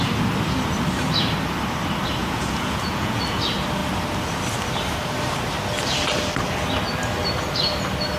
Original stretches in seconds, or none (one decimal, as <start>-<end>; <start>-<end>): 0.0-2.2; 3.2-8.2